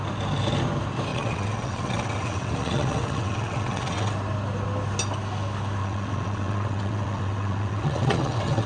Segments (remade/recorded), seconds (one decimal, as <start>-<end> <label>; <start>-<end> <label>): 0.0-1.1 recorded; 1.1-4.1 remade; 4.1-5.8 recorded; 5.8-8.7 remade